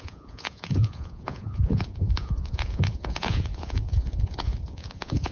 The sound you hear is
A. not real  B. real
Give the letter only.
A